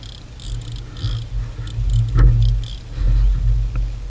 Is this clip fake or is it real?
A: real